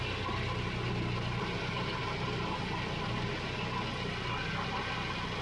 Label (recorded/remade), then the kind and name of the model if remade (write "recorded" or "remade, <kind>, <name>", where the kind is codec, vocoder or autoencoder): recorded